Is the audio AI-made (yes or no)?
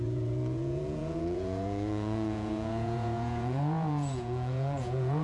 yes